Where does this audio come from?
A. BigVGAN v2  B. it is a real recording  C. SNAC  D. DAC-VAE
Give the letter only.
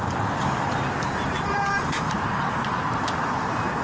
A